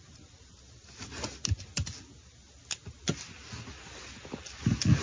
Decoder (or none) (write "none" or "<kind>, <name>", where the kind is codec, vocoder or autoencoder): none